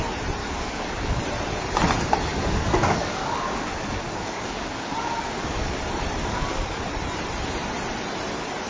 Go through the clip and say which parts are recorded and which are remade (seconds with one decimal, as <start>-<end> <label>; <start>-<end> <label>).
0.0-0.4 recorded; 0.4-1.2 remade; 1.2-2.3 recorded; 2.3-5.8 remade; 5.8-6.2 recorded; 6.2-6.8 remade; 6.8-8.7 recorded